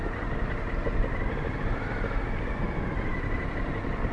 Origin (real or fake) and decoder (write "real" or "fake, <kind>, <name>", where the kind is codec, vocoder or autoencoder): real